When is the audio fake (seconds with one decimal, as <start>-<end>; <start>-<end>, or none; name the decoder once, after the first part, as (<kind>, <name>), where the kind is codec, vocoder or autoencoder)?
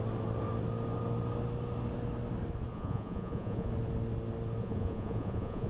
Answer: 2.7-3.7 (vocoder, Vocos); 4.6-5.7